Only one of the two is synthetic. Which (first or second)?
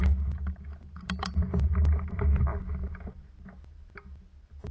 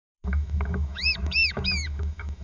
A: second